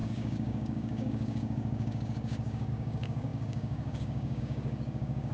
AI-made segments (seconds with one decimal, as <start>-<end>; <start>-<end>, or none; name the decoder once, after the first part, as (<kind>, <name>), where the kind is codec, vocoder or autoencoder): 0.0-5.3 (codec, DAC)